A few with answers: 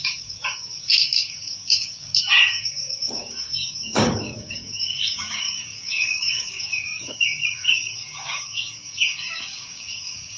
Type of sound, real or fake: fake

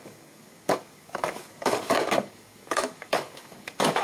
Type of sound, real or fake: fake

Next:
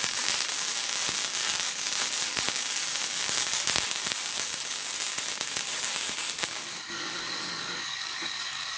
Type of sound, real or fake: fake